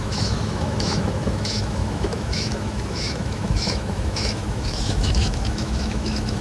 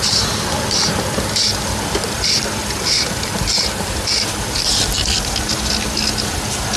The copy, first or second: first